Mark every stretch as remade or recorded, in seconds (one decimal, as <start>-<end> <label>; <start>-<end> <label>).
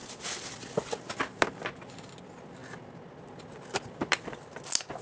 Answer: 0.0-5.0 recorded